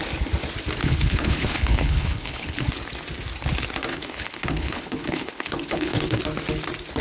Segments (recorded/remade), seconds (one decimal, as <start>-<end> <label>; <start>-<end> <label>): 0.0-0.8 recorded; 0.8-2.7 remade; 2.7-3.9 recorded; 3.9-6.2 remade; 6.2-7.0 recorded